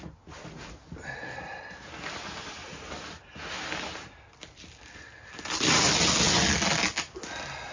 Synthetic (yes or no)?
no